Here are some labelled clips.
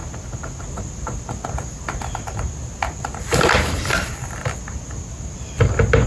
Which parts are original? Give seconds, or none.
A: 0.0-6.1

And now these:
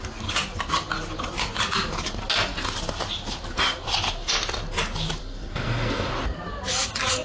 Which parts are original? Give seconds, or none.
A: 0.0-5.2; 6.1-7.2

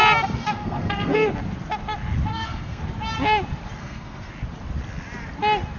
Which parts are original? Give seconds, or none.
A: 0.0-0.4; 1.3-2.3; 2.8-3.8; 4.3-5.8

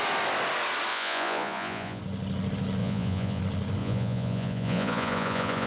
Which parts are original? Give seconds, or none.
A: 0.0-0.9; 2.0-2.8; 3.4-3.8

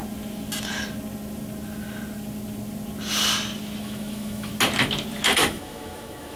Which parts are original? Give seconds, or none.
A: 0.0-3.8; 4.5-5.5

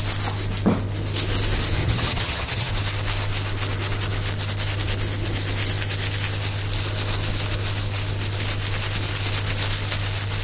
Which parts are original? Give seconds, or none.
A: 0.0-1.8; 2.7-10.4

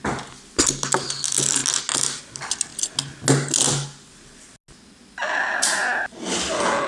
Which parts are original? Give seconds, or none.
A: 0.0-6.9